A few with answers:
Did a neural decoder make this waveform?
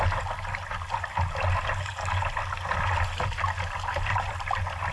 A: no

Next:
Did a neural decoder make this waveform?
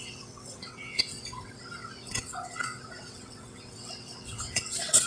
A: yes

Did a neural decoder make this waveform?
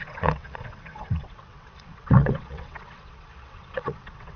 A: yes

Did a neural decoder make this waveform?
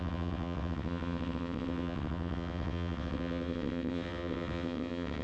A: yes